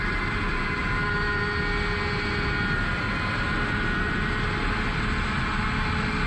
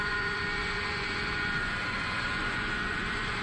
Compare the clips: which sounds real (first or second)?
first